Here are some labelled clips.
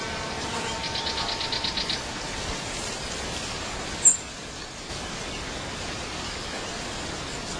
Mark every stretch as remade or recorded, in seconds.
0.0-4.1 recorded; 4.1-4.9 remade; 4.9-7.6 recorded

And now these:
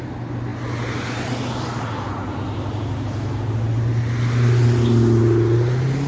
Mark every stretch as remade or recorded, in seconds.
0.0-6.1 recorded

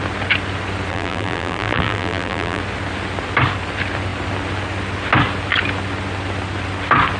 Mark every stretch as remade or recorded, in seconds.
0.0-0.9 recorded; 0.9-2.6 remade; 2.6-7.2 recorded

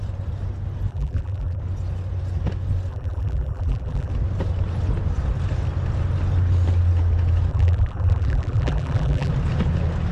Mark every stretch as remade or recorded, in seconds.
0.0-0.9 recorded; 0.9-1.6 remade; 1.6-2.9 recorded; 2.9-4.1 remade; 4.1-7.5 recorded; 7.5-9.3 remade; 9.3-10.1 recorded